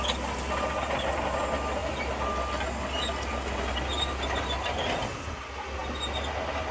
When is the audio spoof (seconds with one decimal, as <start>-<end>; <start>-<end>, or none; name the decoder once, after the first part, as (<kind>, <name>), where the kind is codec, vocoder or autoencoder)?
none

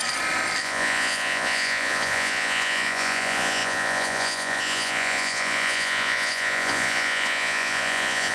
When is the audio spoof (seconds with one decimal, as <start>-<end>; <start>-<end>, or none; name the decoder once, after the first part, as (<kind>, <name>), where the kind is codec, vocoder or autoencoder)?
0.6-8.3 (vocoder, Vocos)